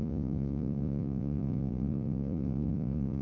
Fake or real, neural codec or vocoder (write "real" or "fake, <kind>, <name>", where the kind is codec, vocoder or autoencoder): fake, vocoder, Vocos